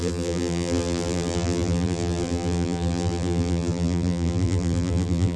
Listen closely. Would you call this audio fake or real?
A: fake